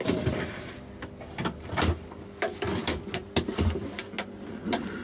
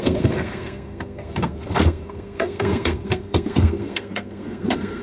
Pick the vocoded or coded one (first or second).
second